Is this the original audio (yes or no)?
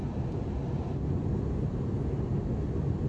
yes